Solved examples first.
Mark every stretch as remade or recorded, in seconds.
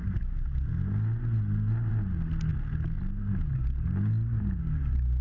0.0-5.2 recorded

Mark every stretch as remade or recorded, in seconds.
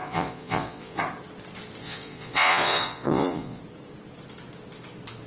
0.0-1.0 remade; 1.0-1.8 recorded; 1.8-3.6 remade; 3.6-5.3 recorded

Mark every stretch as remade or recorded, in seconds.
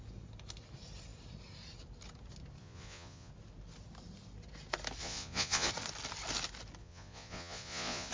0.0-2.6 recorded; 2.6-3.3 remade; 3.3-5.0 recorded; 5.0-5.7 remade; 5.7-6.8 recorded; 6.8-8.1 remade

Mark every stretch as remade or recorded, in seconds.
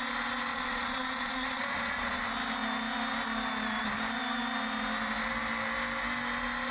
0.0-0.5 recorded; 0.5-2.2 remade; 2.2-6.7 recorded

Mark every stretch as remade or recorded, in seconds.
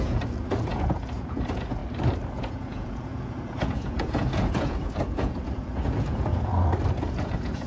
0.0-1.8 remade; 1.8-2.3 recorded; 2.3-6.5 remade; 6.5-7.0 recorded; 7.0-7.7 remade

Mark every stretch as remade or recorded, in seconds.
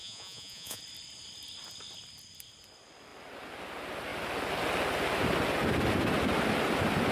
0.0-0.8 remade; 0.8-7.1 recorded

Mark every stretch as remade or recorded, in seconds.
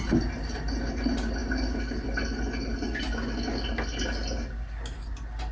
0.0-5.5 recorded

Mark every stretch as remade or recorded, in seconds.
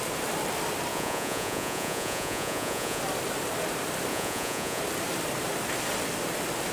0.0-0.9 recorded; 0.9-3.0 remade; 3.0-4.1 recorded; 4.1-4.8 remade; 4.8-6.7 recorded